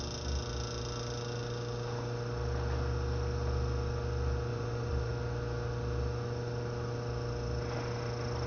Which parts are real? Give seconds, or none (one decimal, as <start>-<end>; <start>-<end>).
0.0-4.5; 5.1-8.5

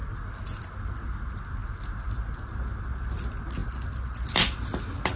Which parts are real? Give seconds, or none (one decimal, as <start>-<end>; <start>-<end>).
0.0-1.6; 2.8-3.6; 4.8-5.2

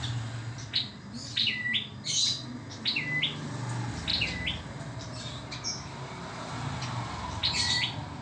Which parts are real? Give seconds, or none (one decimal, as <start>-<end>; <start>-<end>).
0.0-8.2

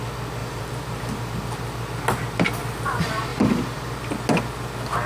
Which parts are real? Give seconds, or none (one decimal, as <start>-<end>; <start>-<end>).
0.0-0.4; 1.3-3.3; 4.1-5.1

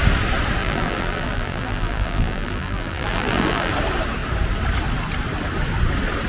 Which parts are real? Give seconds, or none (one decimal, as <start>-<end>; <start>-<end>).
0.0-0.6; 3.7-6.3

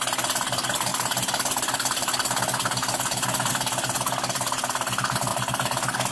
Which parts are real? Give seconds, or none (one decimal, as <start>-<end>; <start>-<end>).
0.0-6.1